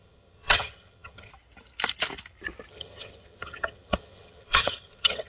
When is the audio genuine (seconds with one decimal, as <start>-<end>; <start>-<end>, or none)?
1.3-2.7